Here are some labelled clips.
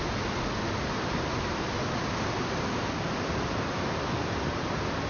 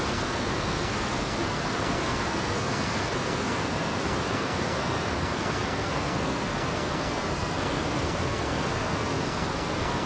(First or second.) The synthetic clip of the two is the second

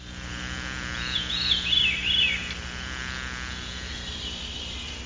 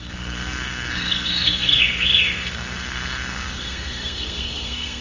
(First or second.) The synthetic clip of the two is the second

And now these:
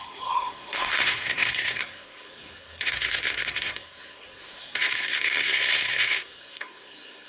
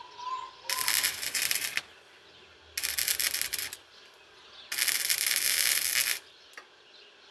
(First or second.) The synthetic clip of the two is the first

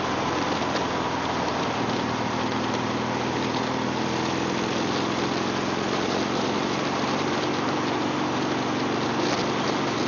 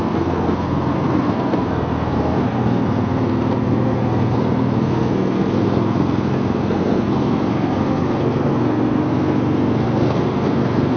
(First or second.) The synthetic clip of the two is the second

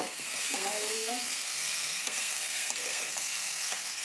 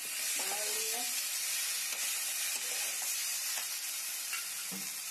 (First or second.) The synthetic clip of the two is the first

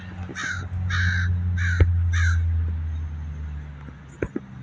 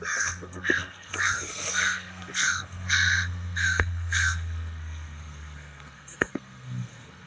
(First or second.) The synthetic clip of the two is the second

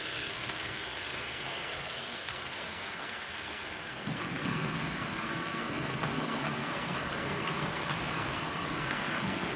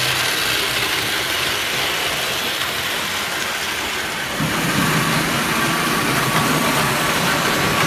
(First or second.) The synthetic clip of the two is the first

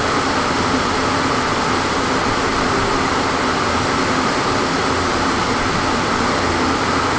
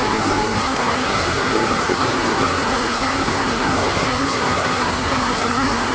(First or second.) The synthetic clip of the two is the second